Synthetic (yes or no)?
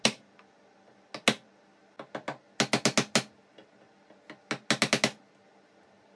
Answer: no